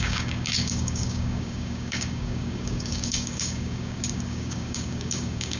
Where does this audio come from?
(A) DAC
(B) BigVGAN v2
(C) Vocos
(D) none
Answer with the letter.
A